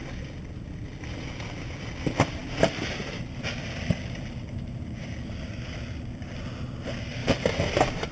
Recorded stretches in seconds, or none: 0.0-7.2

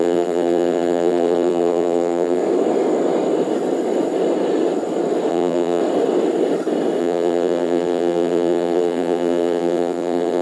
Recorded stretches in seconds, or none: 2.4-5.3; 5.8-7.0

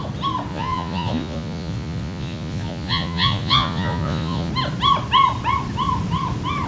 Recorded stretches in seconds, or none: 0.0-0.5; 4.5-6.7

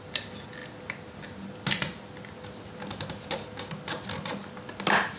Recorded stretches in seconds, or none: 0.0-5.2

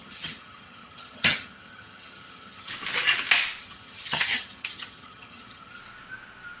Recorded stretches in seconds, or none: 2.7-3.6; 5.8-6.6

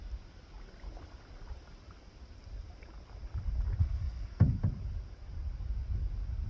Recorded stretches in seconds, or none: 0.0-3.8; 4.4-6.5

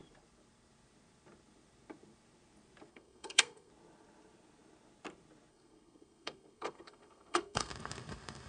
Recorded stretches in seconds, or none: 0.0-2.9; 3.7-5.5; 7.7-8.5